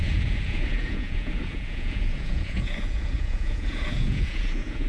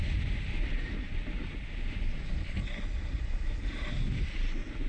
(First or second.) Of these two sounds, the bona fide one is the second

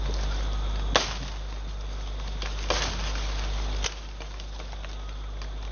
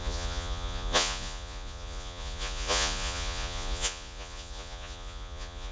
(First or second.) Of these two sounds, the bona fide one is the first